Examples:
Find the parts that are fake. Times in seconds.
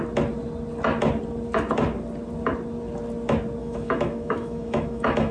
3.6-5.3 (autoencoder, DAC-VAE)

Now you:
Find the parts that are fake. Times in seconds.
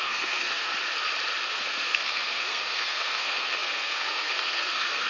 0.0-0.7 (codec, SNAC); 1.5-5.1